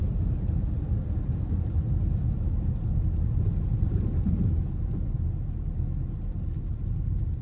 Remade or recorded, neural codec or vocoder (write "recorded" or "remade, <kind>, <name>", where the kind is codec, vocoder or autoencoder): recorded